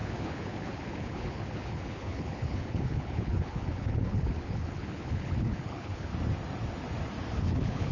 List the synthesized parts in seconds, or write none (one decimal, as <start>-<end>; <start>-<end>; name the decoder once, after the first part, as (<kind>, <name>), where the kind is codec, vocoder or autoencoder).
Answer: 0.0-6.1 (codec, HILCodec); 7.4-7.9